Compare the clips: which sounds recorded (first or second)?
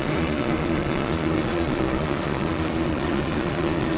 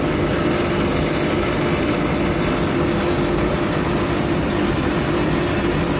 second